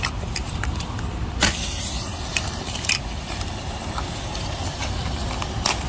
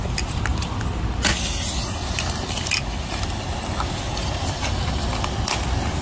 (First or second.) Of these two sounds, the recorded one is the second